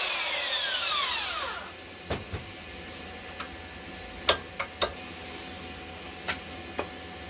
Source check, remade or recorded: recorded